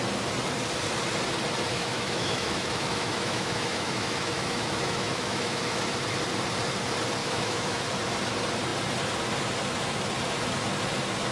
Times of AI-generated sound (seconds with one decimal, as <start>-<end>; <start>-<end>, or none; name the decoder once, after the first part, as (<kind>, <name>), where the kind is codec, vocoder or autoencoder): 1.7-5.8 (autoencoder, DAC-VAE); 7.2-7.8